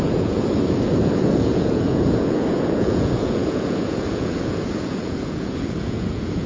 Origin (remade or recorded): remade